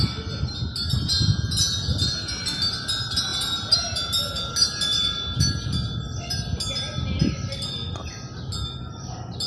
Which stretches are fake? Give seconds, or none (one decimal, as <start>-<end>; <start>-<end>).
none